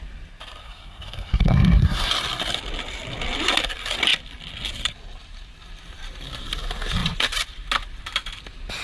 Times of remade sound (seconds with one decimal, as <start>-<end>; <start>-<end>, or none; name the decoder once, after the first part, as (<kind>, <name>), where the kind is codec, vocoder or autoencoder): 0.6-2.1 (codec, SNAC)

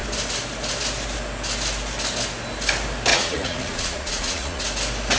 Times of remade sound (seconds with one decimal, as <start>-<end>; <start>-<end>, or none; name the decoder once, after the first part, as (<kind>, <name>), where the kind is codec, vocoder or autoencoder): 3.1-4.6 (vocoder, Vocos)

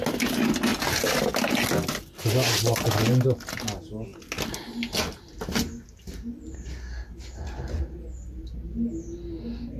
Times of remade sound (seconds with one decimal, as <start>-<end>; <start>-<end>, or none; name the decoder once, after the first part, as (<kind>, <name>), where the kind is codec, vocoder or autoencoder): none

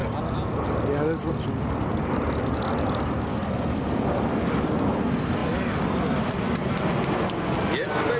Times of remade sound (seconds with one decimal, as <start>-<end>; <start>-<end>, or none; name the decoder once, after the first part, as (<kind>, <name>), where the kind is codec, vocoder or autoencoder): none

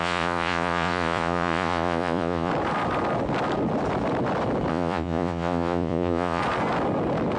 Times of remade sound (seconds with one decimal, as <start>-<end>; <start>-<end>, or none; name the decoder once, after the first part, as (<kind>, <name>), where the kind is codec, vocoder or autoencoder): 0.0-2.5 (vocoder, Vocos); 4.7-6.4

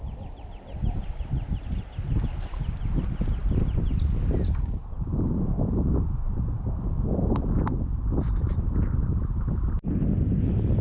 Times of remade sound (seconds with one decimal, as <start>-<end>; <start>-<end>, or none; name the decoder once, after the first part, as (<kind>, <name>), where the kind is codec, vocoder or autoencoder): none

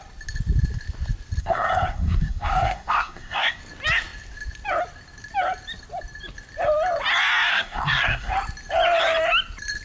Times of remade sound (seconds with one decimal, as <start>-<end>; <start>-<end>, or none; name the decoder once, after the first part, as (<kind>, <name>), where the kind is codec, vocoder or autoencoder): 1.4-3.6 (codec, SNAC); 7.5-8.3